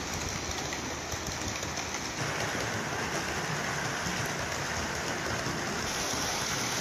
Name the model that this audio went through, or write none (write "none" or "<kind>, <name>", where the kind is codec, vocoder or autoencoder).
none